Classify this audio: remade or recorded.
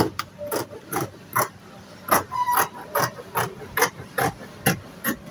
recorded